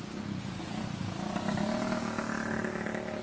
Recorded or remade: recorded